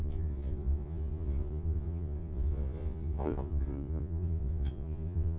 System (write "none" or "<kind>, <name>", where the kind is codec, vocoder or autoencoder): vocoder, Vocos